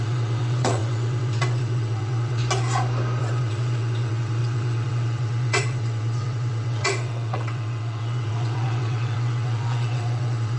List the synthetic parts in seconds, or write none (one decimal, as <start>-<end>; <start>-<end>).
0.0-2.4; 3.2-10.6